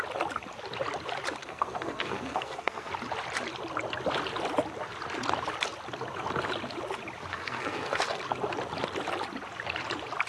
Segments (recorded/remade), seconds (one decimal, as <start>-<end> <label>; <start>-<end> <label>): 0.0-1.4 recorded; 1.4-2.9 remade; 2.9-7.3 recorded; 7.3-8.2 remade; 8.2-10.3 recorded